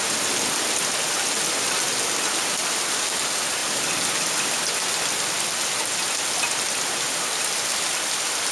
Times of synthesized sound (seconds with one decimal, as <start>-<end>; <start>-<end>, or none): none